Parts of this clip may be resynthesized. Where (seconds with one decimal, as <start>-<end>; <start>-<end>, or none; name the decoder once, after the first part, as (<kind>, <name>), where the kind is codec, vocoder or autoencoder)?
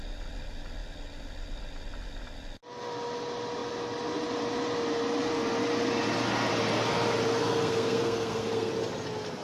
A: 7.4-8.7 (codec, SNAC)